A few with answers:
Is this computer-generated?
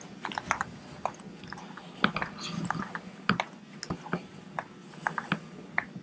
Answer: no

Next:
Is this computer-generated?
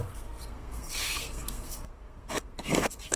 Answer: yes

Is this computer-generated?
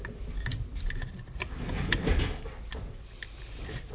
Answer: no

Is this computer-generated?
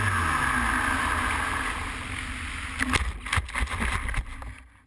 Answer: no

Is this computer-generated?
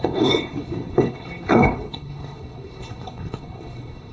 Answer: yes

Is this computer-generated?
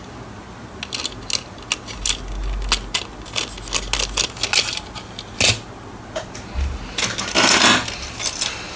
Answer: no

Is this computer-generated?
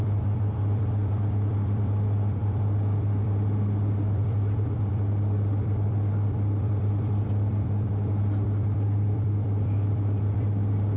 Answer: yes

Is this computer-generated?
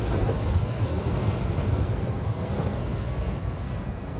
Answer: yes